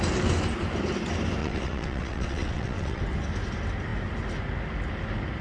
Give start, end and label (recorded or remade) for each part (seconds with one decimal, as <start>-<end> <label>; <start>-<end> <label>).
0.0-1.4 recorded; 1.4-3.0 remade; 3.0-5.4 recorded